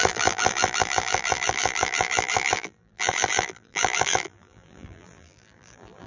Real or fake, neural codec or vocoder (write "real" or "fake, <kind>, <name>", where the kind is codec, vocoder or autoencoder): fake, vocoder, BigVGAN v2